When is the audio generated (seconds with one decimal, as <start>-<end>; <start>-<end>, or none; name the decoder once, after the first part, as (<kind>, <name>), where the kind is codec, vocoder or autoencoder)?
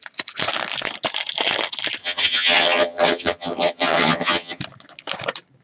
2.0-4.6 (vocoder, HiFi-GAN)